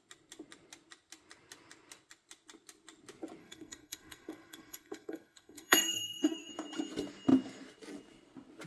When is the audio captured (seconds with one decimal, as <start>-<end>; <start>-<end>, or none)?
0.0-3.4; 6.5-8.7